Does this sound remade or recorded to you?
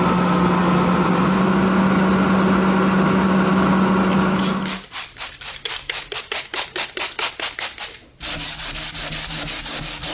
recorded